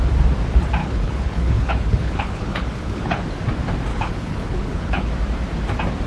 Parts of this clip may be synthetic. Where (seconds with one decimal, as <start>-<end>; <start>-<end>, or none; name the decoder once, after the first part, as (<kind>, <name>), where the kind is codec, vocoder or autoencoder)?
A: 0.8-3.2 (codec, HILCodec); 3.9-5.1